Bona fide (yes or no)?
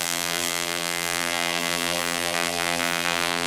no